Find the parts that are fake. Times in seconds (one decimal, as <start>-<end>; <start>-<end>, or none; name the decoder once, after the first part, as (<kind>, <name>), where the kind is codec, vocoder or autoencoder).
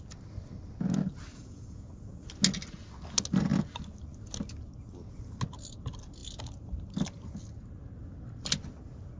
1.3-1.9 (vocoder, Vocos)